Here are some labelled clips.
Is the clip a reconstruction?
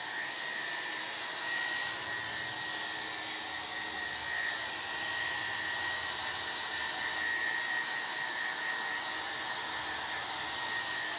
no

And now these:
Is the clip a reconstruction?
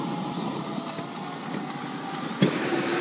no